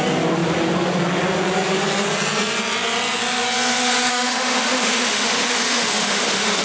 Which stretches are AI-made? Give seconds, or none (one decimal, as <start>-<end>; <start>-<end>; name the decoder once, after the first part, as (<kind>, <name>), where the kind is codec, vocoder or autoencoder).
4.1-6.6 (autoencoder, DAC-VAE)